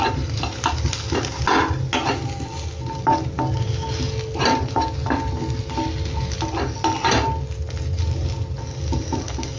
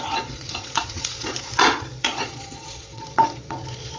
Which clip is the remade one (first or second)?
second